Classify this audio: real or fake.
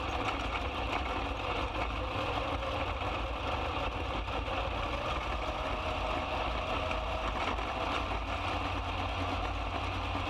real